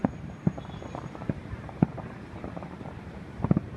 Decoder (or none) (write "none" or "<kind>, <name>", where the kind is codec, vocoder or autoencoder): vocoder, BigVGAN v2